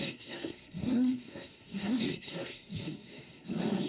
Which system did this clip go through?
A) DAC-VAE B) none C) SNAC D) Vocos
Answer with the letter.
C